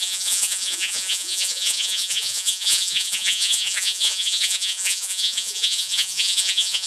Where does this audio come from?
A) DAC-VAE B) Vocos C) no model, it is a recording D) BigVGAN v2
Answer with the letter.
B